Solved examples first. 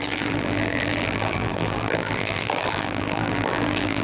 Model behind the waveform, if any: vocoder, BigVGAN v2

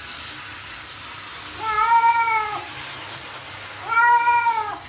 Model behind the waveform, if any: none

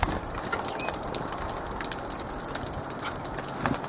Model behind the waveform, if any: vocoder, BigVGAN v2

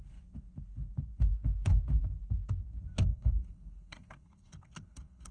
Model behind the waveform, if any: codec, SNAC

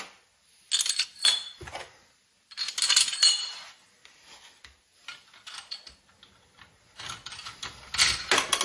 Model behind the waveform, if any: none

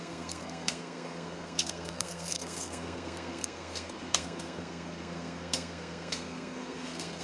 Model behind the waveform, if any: codec, SNAC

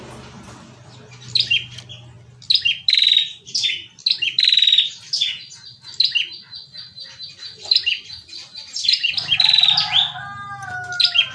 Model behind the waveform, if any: none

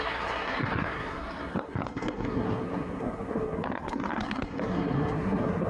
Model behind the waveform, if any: codec, SNAC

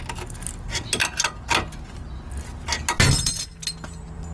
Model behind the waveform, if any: none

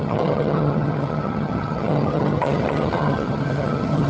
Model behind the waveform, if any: vocoder, HiFi-GAN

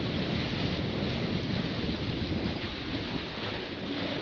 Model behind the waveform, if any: none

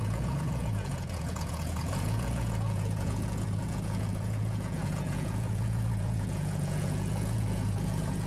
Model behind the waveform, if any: vocoder, Vocos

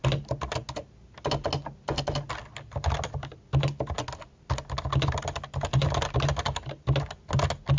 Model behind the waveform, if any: none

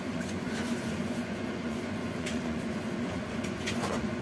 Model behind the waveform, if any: vocoder, Vocos